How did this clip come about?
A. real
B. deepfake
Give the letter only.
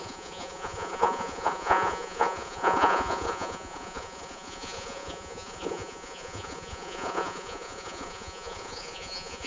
B